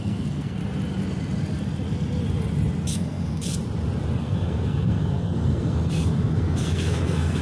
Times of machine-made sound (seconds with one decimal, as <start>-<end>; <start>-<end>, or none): 0.0-0.6; 2.9-3.6; 4.2-7.4